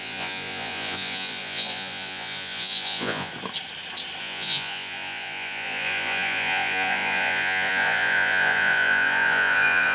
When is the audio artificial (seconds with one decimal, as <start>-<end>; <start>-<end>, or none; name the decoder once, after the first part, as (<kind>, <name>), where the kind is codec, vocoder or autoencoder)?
0.0-3.3 (vocoder, Vocos); 4.2-9.9